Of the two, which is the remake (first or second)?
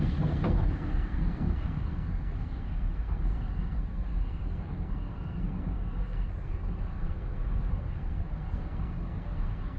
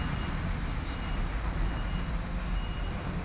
first